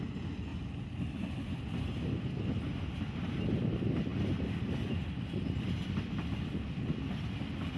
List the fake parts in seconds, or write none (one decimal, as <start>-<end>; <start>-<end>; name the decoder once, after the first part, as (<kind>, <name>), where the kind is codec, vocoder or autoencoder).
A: none